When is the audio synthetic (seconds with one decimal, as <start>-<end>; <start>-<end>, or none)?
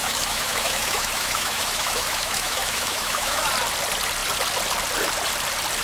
0.0-3.5